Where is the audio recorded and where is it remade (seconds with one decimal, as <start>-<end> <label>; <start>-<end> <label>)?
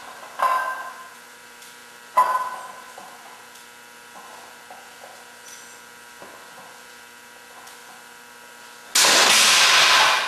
0.0-10.3 recorded